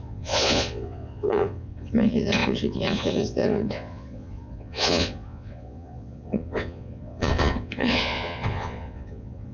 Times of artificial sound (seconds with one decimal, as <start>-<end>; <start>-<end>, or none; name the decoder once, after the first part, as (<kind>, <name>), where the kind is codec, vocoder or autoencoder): 0.0-9.5 (vocoder, Vocos)